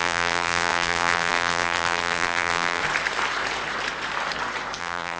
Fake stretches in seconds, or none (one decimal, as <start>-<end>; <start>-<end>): 0.0-2.8; 4.8-5.2